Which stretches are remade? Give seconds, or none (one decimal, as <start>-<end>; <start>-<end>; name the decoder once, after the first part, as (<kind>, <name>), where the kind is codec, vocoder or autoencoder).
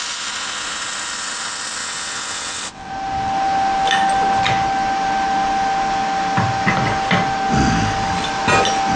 1.8-2.9 (vocoder, WaveNeXt)